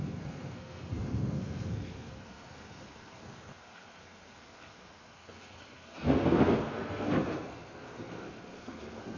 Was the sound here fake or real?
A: fake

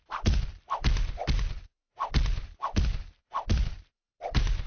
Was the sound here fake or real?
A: real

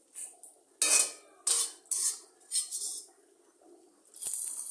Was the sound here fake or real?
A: real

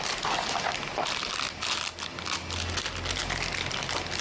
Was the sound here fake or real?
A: real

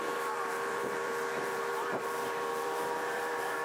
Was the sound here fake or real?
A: fake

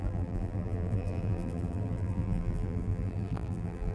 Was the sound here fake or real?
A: fake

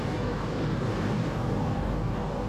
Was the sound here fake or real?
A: fake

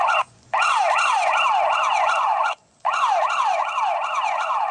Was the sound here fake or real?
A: fake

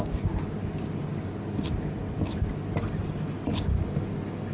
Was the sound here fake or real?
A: real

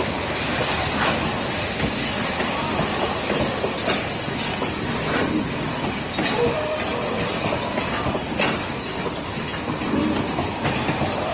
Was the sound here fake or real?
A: real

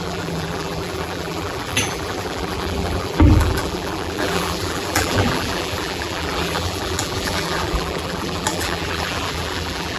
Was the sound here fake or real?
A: fake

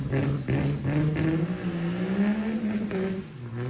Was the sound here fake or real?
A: real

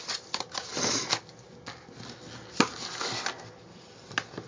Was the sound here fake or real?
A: real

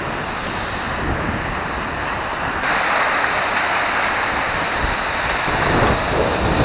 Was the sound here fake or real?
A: real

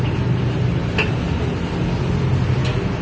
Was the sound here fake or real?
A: real